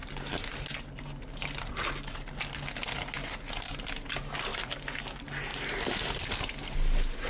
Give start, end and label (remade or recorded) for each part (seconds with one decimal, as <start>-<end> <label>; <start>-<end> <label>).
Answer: 0.0-3.2 recorded; 3.2-4.1 remade; 4.1-4.5 recorded; 4.5-5.0 remade; 5.0-5.5 recorded; 5.5-6.5 remade; 6.5-7.3 recorded